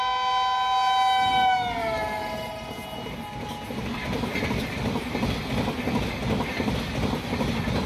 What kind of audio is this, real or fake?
real